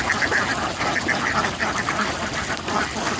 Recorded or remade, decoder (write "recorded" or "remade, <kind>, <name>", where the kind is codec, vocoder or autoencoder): recorded